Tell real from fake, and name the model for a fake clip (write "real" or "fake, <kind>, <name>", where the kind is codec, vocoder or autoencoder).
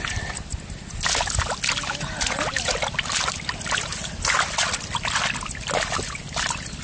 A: real